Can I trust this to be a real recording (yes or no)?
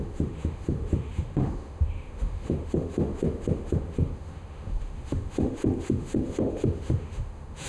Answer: no